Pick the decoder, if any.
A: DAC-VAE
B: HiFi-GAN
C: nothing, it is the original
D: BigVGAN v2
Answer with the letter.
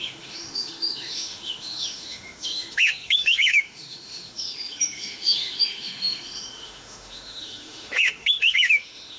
A